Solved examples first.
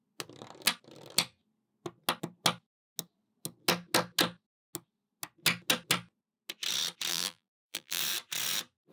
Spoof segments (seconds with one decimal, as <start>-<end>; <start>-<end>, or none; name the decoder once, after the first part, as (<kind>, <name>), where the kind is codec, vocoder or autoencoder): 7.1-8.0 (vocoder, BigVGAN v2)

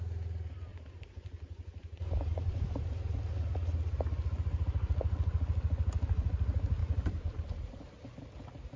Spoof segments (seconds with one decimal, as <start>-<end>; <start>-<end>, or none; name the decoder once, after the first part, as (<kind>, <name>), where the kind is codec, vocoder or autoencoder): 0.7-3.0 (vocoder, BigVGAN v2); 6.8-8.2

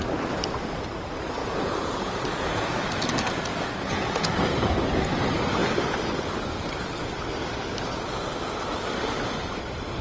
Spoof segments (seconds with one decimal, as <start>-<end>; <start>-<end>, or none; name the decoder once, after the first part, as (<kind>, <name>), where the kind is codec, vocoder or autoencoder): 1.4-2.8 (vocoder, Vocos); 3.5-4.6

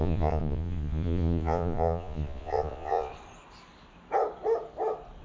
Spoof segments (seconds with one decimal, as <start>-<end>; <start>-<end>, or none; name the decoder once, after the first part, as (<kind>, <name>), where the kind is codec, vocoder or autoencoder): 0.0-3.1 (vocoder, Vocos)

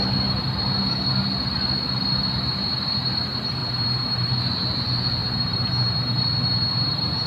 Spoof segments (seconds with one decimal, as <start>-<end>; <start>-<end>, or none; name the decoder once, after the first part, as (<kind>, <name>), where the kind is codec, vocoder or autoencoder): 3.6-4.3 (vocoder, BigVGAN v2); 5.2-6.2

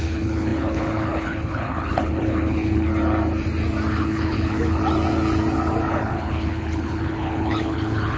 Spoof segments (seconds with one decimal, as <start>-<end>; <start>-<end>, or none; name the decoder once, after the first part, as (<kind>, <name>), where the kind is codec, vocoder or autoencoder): 0.0-2.9 (codec, HILCodec); 3.9-4.8; 5.9-8.2

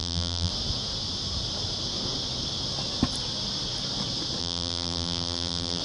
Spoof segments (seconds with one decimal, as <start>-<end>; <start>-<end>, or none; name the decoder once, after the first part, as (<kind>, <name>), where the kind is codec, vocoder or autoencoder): 0.0-0.5 (vocoder, BigVGAN v2); 4.4-5.8

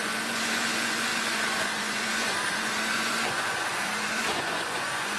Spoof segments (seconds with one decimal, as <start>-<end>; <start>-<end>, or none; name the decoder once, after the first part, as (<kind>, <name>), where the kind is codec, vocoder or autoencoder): 0.0-5.2 (vocoder, Vocos)